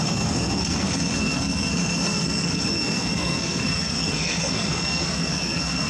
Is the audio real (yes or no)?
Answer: no